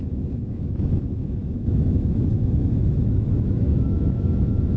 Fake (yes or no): yes